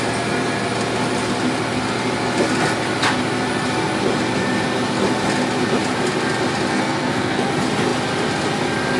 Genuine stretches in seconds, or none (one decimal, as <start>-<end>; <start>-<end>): 0.0-6.7; 7.5-9.0